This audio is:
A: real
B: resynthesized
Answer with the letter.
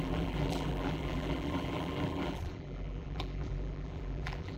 B